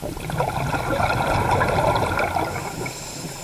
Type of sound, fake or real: real